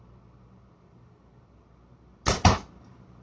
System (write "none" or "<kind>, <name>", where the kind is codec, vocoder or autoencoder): none